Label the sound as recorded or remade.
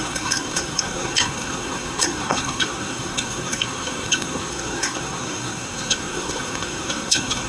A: remade